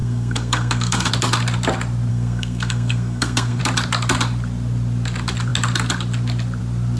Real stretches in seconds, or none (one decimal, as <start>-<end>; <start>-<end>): 1.1-2.1; 3.6-7.0